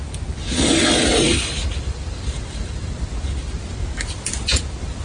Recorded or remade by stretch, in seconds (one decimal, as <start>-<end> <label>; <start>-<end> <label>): 0.0-0.8 recorded; 0.8-2.9 remade; 2.9-5.0 recorded

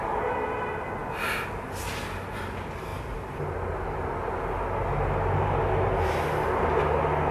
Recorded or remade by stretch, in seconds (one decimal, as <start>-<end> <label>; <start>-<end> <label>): 0.0-7.3 recorded

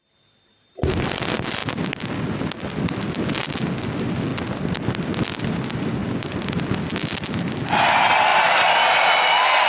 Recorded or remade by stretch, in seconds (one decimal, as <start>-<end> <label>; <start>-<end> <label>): 0.0-1.6 remade; 1.6-2.9 recorded; 2.9-4.3 remade; 4.3-5.4 recorded; 5.4-9.7 remade